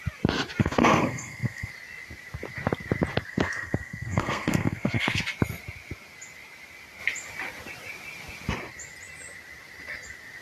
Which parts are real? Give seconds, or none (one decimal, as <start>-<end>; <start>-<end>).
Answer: 0.0-0.6; 1.7-3.3; 5.2-10.4

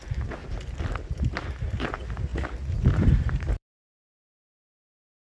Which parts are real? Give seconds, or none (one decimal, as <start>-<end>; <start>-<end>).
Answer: 0.4-1.1

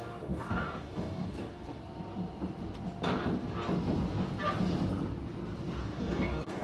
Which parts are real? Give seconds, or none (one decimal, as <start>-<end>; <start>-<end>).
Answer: 1.8-5.8

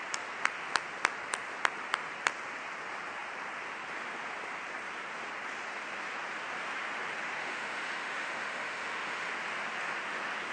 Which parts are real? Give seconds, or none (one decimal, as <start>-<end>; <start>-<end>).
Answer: 0.0-7.4; 9.3-10.5